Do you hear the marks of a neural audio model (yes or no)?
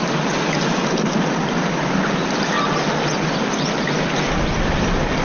no